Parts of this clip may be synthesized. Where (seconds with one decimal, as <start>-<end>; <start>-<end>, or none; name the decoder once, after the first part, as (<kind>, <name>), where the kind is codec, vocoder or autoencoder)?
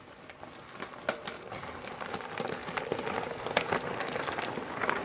none